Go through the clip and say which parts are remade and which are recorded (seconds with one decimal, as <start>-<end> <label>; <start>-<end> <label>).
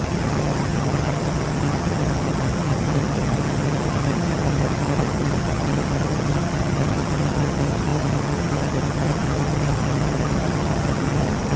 0.0-11.6 remade